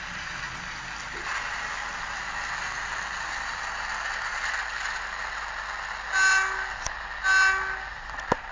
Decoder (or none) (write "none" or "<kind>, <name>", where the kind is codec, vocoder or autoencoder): none